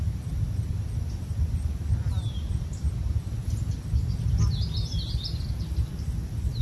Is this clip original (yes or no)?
yes